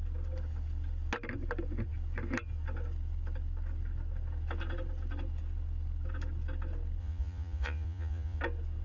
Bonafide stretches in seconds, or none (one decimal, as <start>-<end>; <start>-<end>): 0.0-7.0; 8.4-8.8